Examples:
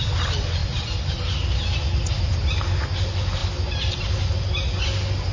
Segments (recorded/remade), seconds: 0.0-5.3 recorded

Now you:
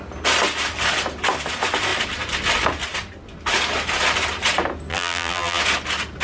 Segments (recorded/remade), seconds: 0.0-4.9 recorded; 4.9-5.6 remade; 5.6-6.2 recorded

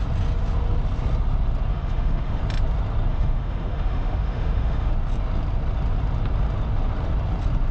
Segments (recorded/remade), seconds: 0.0-1.7 recorded; 1.7-2.4 remade; 2.4-3.1 recorded; 3.1-4.9 remade; 4.9-7.7 recorded

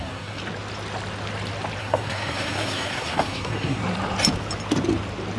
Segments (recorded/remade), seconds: 0.0-0.4 remade; 0.4-1.8 recorded; 1.8-3.8 remade; 3.8-5.4 recorded

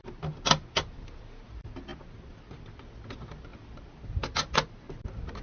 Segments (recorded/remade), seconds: 0.0-5.4 recorded